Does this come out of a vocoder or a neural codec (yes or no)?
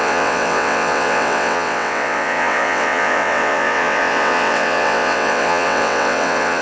yes